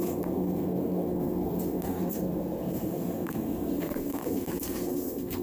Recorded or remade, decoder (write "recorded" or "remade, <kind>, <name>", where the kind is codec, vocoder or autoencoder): remade, codec, SNAC